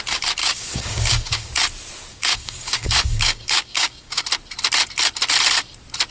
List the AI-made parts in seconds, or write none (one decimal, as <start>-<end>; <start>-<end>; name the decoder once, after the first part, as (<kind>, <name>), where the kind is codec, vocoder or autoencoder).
0.4-1.5 (codec, DAC); 2.1-4.2